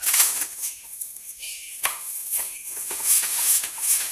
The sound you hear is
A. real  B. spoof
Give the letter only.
B